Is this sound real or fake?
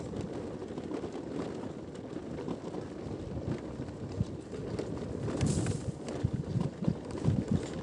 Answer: real